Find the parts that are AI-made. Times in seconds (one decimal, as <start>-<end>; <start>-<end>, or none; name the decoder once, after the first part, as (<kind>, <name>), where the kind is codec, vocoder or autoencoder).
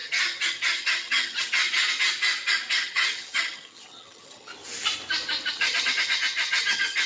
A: 0.0-1.6 (vocoder, HiFi-GAN); 2.8-4.5; 5.5-7.1